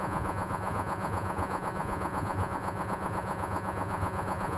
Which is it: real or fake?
fake